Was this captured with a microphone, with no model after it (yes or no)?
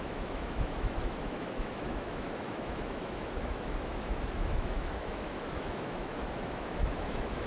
no